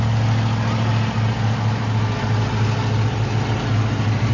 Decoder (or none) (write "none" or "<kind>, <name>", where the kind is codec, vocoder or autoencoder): none